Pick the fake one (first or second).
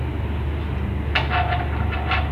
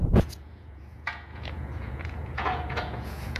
second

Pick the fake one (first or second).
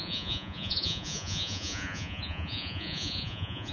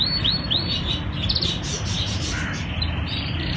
first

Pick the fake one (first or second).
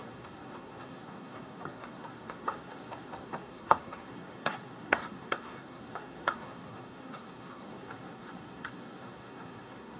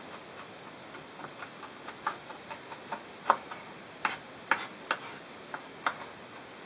first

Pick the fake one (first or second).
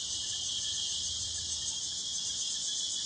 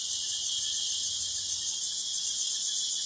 second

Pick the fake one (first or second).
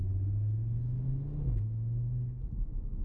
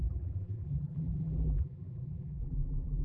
second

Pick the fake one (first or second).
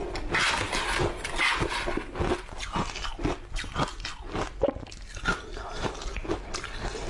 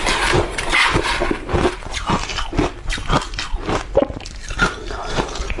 second